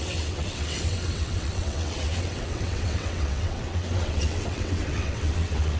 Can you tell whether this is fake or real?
fake